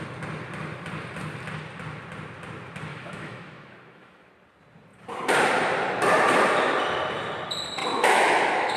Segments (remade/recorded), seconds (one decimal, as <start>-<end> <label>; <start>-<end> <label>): 0.0-2.9 recorded; 2.9-4.3 remade; 4.3-7.8 recorded; 7.8-8.8 remade

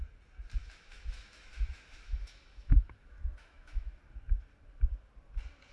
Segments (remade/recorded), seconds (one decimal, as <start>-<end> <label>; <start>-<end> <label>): 0.0-0.6 recorded; 0.6-4.0 remade; 4.0-5.7 recorded

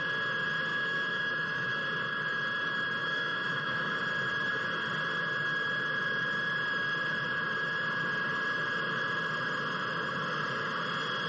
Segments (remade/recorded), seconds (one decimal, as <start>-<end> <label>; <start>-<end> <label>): 0.0-0.7 recorded; 0.7-1.8 remade; 1.8-3.0 recorded; 3.0-4.0 remade; 4.0-11.3 recorded

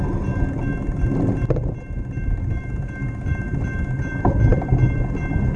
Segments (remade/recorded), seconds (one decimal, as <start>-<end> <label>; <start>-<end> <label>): 0.0-5.6 recorded

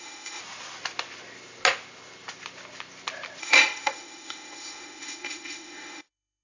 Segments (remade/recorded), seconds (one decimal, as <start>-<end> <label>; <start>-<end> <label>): 0.0-0.4 remade; 0.4-3.4 recorded; 3.4-6.4 remade

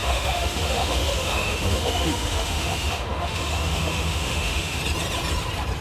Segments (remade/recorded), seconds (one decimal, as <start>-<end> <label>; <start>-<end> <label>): 0.0-4.8 remade; 4.8-5.8 recorded

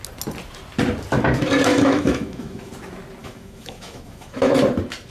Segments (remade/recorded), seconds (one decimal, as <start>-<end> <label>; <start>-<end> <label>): 0.0-1.7 recorded; 1.7-2.7 remade; 2.7-3.2 recorded; 3.2-4.5 remade; 4.5-5.1 recorded